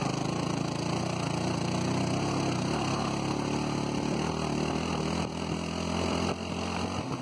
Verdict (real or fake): real